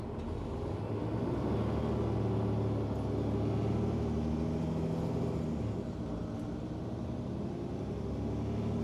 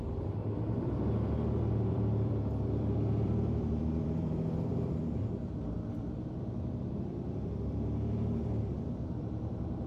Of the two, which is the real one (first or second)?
first